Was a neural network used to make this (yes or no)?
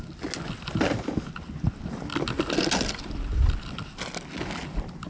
no